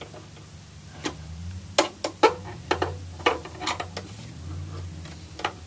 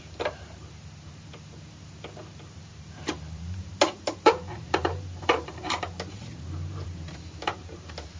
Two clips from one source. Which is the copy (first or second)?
second